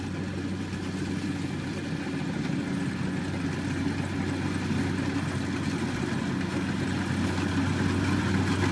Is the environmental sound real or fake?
real